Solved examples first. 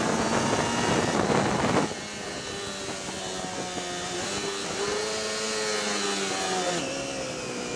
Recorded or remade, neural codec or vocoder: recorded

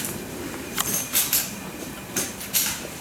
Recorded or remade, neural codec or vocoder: remade, vocoder, BigVGAN v2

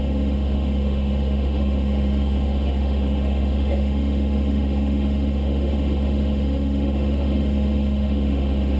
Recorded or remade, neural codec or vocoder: remade, autoencoder, DAC-VAE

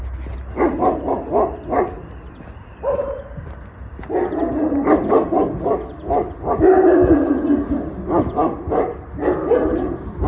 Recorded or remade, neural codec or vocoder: recorded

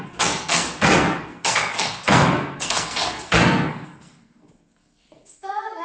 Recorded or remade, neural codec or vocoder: remade, codec, SNAC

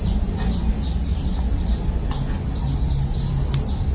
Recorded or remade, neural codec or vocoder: recorded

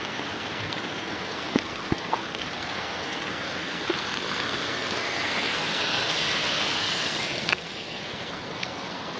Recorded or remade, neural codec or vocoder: remade, codec, SNAC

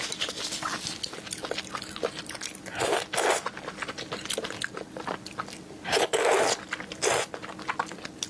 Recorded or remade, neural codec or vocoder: recorded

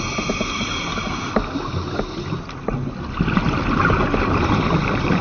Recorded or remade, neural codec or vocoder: recorded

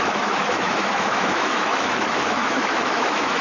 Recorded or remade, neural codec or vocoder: remade, autoencoder, DAC-VAE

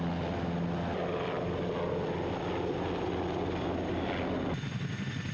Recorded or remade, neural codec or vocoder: recorded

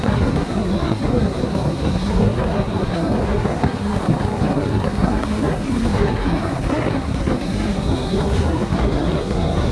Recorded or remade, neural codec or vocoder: remade, codec, SNAC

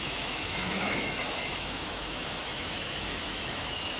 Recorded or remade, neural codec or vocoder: remade, autoencoder, DAC-VAE